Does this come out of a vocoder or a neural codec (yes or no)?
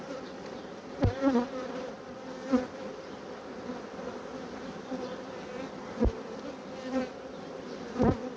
yes